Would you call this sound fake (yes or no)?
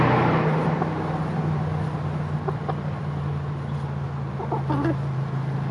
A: no